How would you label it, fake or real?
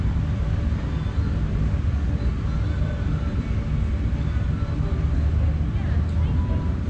real